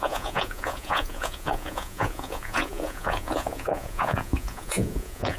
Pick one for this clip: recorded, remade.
remade